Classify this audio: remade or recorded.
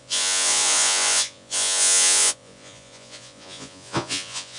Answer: remade